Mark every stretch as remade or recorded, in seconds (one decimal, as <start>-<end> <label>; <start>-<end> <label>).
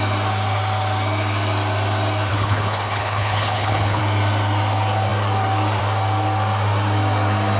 0.0-2.3 recorded; 2.3-4.0 remade; 4.0-7.6 recorded